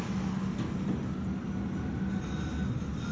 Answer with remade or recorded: recorded